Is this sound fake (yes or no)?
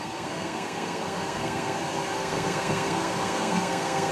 yes